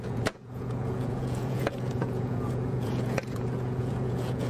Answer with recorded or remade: remade